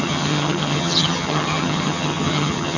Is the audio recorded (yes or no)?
no